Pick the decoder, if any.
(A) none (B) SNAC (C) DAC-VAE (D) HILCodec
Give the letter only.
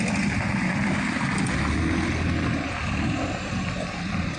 A